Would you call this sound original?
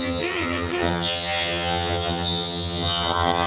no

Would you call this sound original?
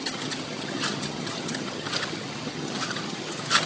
no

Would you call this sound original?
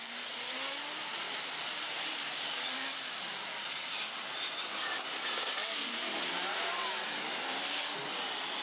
yes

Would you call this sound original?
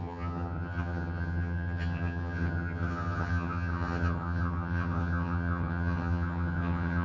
no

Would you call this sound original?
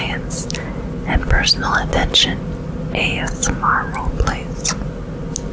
yes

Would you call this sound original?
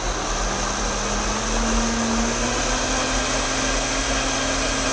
yes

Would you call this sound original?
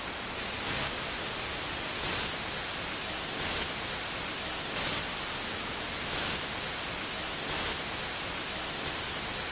yes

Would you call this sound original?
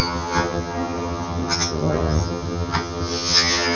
no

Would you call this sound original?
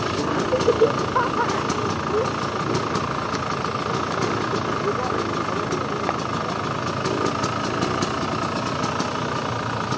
yes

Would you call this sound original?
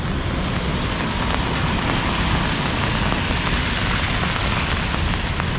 yes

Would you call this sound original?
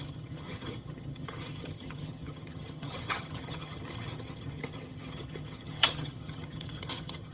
no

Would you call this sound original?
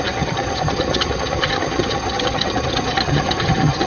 no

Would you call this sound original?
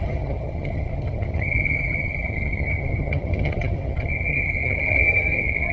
no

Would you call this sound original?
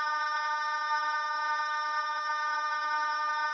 no